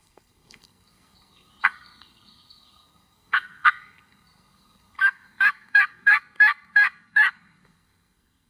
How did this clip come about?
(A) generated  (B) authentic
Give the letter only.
A